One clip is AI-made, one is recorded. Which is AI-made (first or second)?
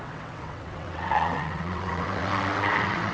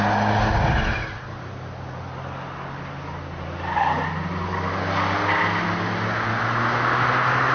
first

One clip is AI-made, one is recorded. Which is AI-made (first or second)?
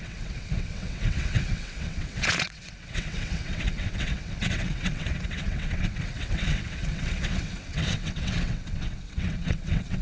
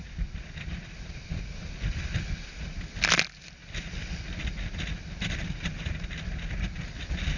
first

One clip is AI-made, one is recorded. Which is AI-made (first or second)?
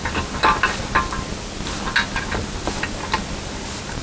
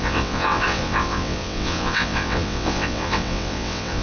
second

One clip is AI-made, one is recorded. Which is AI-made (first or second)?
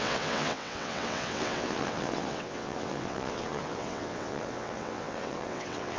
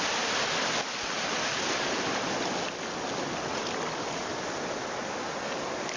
first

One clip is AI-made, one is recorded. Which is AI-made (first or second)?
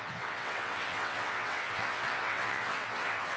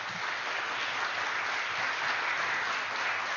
first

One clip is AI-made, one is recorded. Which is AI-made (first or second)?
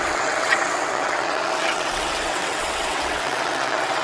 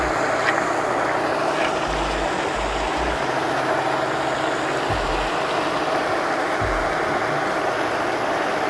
first